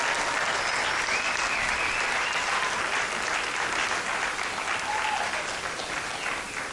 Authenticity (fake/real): real